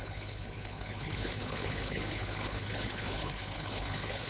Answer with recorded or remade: remade